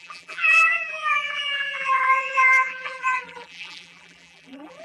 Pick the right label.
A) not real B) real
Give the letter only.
A